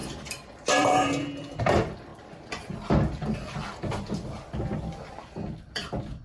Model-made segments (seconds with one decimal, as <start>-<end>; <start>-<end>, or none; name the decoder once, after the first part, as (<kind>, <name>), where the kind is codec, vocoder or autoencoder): 0.0-6.2 (vocoder, BigVGAN v2)